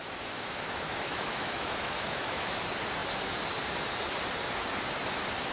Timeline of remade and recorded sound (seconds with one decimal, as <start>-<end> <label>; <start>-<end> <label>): 0.0-2.6 remade; 2.6-5.5 recorded